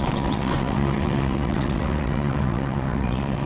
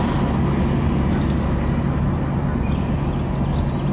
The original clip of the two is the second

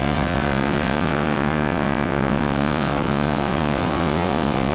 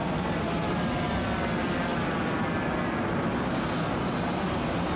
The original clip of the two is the second